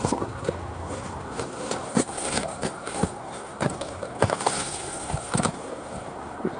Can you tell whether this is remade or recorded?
remade